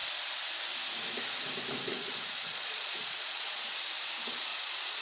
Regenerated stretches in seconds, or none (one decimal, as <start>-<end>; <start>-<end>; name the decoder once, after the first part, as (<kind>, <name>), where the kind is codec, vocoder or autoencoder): 1.9-3.7 (vocoder, Vocos); 4.5-5.0